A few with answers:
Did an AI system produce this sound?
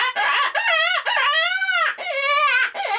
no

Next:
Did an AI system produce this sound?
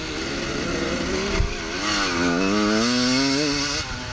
no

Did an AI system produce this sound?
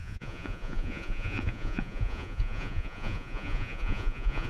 yes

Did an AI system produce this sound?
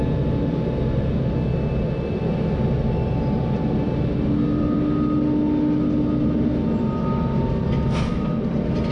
no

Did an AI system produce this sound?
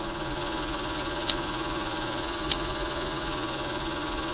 yes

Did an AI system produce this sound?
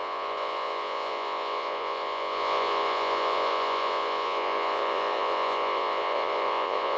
yes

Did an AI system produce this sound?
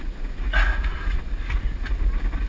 no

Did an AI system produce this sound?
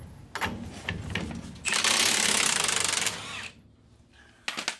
no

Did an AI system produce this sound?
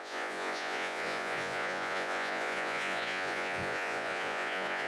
yes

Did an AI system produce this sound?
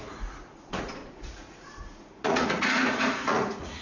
yes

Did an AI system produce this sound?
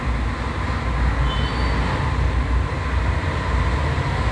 no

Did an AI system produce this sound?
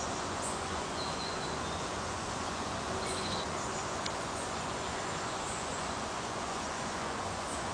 yes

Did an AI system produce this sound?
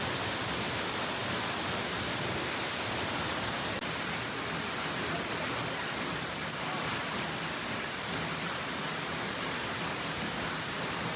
no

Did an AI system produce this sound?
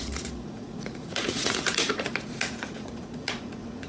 yes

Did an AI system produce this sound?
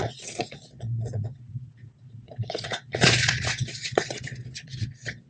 yes